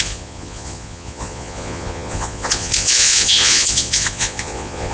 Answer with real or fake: fake